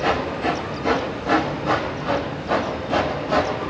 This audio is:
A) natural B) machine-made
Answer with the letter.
A